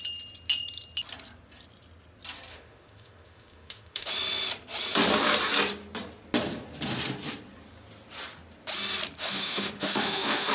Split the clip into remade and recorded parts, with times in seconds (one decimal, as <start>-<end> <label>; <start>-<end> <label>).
0.0-2.5 recorded; 2.5-4.1 remade; 4.1-9.2 recorded; 9.2-10.5 remade